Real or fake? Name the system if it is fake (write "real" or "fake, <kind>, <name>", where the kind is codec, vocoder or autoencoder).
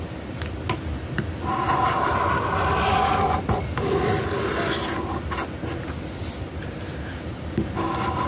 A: real